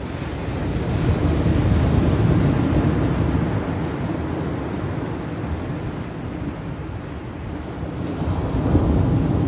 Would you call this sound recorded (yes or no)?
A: yes